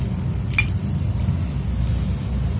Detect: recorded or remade recorded